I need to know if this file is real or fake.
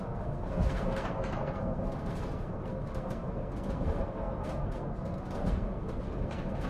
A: fake